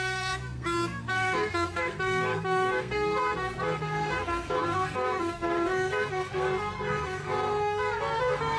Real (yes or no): no